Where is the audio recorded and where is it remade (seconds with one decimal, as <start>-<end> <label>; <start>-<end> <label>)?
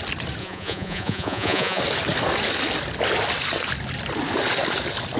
0.0-0.4 recorded; 0.4-1.8 remade; 1.8-5.2 recorded